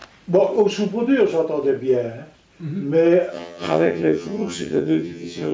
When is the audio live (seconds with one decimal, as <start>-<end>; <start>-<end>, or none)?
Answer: 0.0-3.3